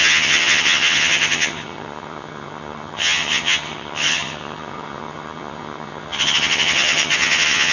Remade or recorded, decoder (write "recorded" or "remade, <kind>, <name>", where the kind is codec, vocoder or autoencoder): remade, vocoder, HiFi-GAN